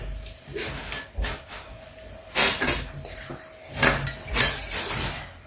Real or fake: real